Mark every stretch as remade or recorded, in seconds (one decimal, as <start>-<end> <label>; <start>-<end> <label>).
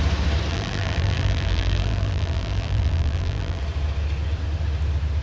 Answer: 0.0-0.5 recorded; 0.5-3.6 remade; 3.6-5.2 recorded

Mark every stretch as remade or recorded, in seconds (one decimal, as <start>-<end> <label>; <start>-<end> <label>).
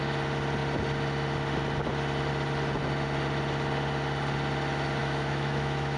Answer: 0.0-5.0 recorded; 5.0-6.0 remade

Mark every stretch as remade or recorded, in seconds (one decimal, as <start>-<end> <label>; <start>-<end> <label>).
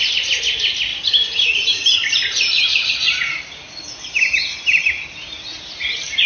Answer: 0.0-6.3 recorded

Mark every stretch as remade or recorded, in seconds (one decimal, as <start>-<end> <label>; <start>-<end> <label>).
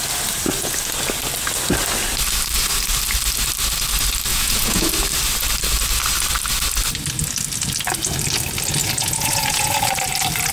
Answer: 0.0-4.3 recorded; 4.3-4.9 remade; 4.9-8.8 recorded; 8.8-9.9 remade; 9.9-10.5 recorded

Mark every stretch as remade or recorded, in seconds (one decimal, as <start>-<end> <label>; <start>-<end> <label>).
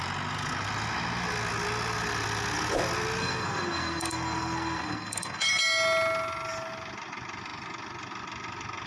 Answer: 0.0-3.2 recorded; 3.2-5.6 remade; 5.6-8.9 recorded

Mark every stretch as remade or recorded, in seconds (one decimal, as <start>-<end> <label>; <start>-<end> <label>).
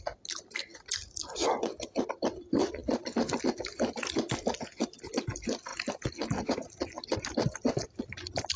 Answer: 0.0-8.6 recorded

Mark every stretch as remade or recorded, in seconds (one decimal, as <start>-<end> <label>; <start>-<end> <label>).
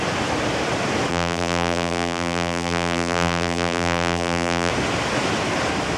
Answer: 0.0-1.1 recorded; 1.1-4.7 remade; 4.7-6.0 recorded